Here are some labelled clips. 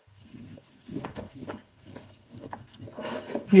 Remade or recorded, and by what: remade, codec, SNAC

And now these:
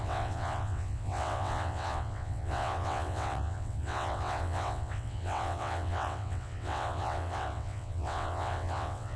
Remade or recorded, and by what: remade, vocoder, WaveNeXt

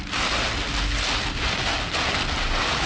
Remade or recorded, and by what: recorded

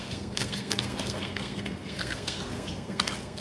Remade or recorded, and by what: remade, codec, SNAC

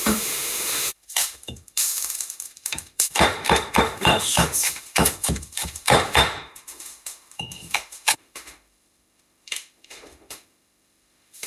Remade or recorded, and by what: remade, autoencoder, DAC-VAE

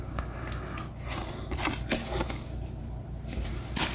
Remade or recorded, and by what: recorded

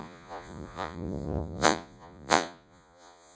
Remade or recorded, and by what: remade, vocoder, Vocos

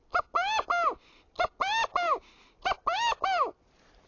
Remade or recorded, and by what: recorded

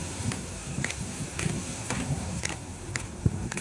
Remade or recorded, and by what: remade, codec, SNAC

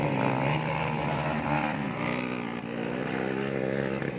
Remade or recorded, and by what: recorded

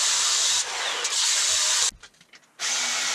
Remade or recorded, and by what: recorded